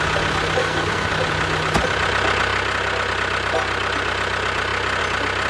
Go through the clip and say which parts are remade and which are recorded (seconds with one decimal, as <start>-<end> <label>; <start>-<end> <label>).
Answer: 0.0-0.6 recorded; 0.6-1.1 remade; 1.1-5.5 recorded